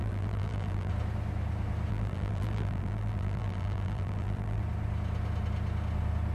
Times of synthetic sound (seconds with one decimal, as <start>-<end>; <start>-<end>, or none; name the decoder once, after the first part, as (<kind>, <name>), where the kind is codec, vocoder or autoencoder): 0.0-0.9 (vocoder, BigVGAN v2); 1.9-4.6